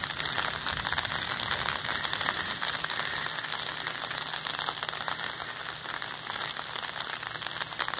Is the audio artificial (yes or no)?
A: no